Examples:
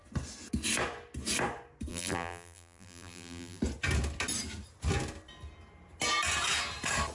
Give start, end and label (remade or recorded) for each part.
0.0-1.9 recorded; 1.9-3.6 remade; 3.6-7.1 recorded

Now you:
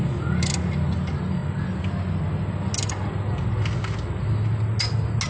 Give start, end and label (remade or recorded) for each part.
0.0-5.3 recorded

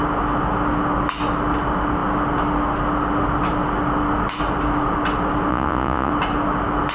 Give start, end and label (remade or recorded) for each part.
0.0-5.5 recorded; 5.5-6.1 remade; 6.1-6.9 recorded

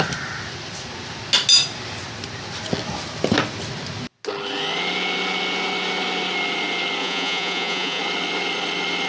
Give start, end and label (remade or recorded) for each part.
0.0-7.0 recorded; 7.0-8.0 remade; 8.0-9.1 recorded

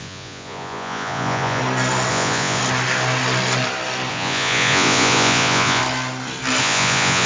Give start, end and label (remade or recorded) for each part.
0.0-1.6 remade; 1.6-2.1 recorded; 2.1-2.6 remade; 2.6-4.1 recorded; 4.1-5.8 remade; 5.8-6.6 recorded; 6.6-7.3 remade

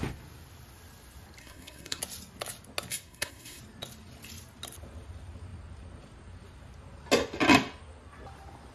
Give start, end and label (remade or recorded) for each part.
0.0-1.4 recorded; 1.4-2.0 remade; 2.0-2.9 recorded; 2.9-3.6 remade; 3.6-8.7 recorded

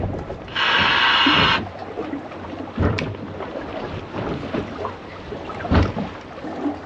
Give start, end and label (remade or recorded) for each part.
0.0-1.8 recorded; 1.8-5.9 remade; 5.9-6.9 recorded

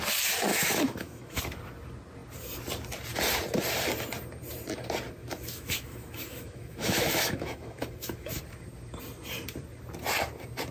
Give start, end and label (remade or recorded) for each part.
0.0-0.5 recorded; 0.5-1.4 remade; 1.4-5.2 recorded; 5.2-8.4 remade; 8.4-10.7 recorded